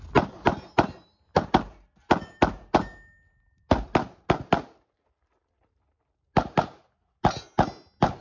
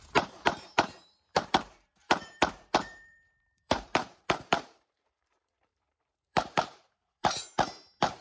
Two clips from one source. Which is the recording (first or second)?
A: first